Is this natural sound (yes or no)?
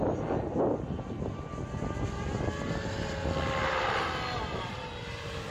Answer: yes